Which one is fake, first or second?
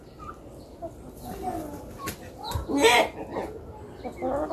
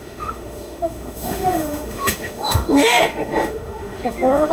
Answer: second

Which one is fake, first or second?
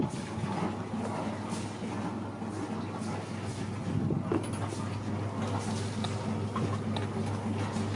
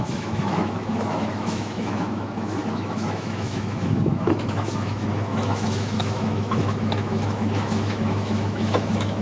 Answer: second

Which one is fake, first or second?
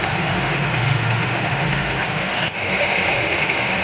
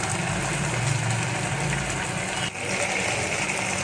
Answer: first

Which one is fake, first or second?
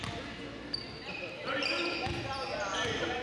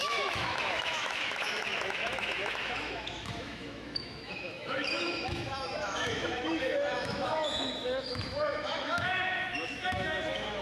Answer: second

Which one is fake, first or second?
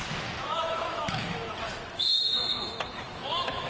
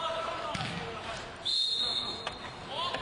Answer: first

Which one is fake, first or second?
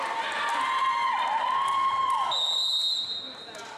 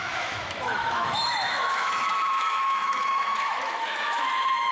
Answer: second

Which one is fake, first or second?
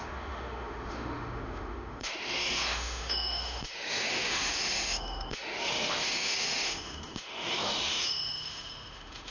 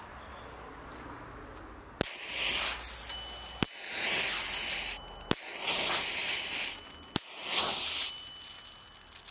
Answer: first